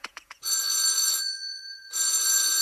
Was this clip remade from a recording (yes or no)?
yes